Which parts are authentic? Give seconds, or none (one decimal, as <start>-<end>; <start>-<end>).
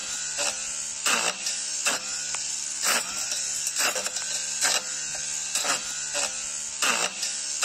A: 4.6-7.6